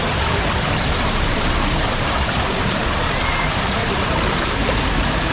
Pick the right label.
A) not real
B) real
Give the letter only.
A